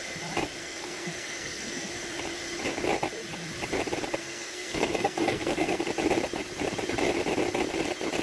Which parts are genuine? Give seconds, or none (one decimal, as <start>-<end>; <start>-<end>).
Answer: 0.0-0.6; 1.9-4.2; 5.8-8.2